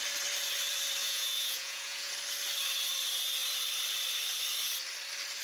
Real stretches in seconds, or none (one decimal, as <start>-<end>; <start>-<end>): 0.0-1.0; 2.1-5.4